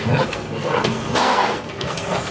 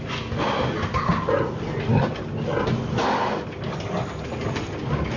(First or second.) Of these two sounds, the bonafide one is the second